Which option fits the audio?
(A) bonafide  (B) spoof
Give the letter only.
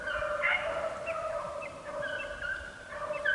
B